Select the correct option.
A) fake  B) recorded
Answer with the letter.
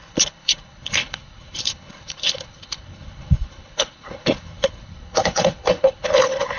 A